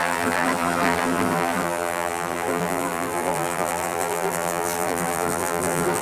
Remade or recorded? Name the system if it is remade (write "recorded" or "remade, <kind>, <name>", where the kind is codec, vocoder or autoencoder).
remade, vocoder, BigVGAN v2